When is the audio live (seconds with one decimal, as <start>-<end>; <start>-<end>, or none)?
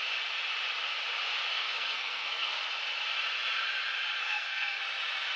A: 0.0-1.5; 2.6-4.2; 4.8-5.4